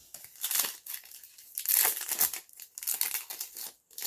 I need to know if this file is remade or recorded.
recorded